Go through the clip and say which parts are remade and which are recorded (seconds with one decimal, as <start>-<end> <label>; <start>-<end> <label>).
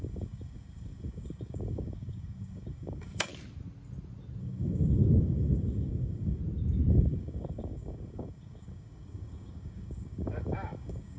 0.0-3.3 remade; 3.3-4.4 recorded; 4.4-6.4 remade; 6.4-6.9 recorded; 6.9-11.2 remade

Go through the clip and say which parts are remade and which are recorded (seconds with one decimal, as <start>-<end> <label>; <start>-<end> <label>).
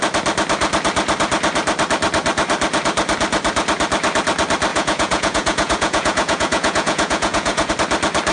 0.0-4.7 recorded; 4.7-7.7 remade; 7.7-8.3 recorded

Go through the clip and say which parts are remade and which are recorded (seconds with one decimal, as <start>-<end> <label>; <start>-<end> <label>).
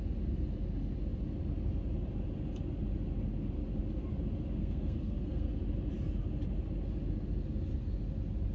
0.0-4.6 recorded; 4.6-5.5 remade; 5.5-8.5 recorded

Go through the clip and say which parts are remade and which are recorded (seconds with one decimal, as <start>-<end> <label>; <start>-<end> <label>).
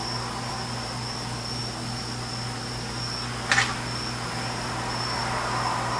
0.0-6.0 recorded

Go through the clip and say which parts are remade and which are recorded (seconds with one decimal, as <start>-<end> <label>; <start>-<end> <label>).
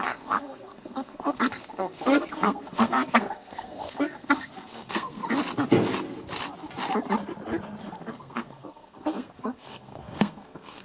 0.0-5.2 remade; 5.2-7.8 recorded; 7.8-10.8 remade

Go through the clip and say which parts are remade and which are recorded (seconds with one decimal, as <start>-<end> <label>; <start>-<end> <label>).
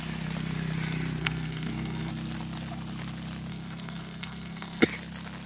0.0-1.2 recorded; 1.2-2.1 remade; 2.1-3.5 recorded; 3.5-4.8 remade; 4.8-5.5 recorded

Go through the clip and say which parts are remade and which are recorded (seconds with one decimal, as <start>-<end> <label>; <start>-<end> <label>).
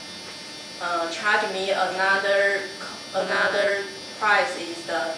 0.0-3.2 recorded; 3.2-3.7 remade; 3.7-5.2 recorded